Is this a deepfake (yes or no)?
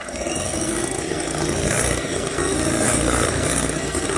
yes